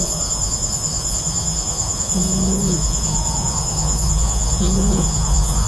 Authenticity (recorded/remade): remade